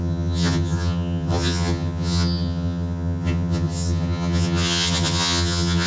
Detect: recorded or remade remade